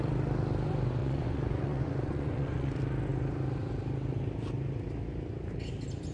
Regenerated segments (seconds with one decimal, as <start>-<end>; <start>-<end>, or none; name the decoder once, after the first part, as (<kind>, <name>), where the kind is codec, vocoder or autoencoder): 1.0-2.7 (vocoder, Vocos)